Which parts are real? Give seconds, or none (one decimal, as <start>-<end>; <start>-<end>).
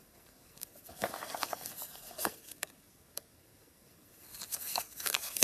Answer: none